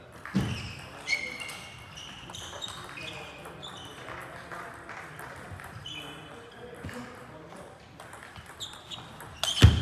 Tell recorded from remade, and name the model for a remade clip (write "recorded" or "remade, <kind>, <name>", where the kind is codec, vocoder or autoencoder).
recorded